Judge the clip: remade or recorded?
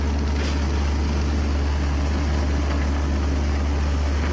recorded